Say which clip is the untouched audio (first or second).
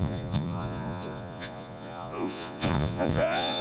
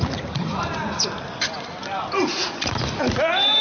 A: second